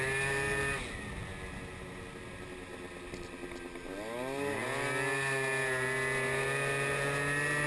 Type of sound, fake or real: real